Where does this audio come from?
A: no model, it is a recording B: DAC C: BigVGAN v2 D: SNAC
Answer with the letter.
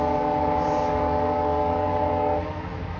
B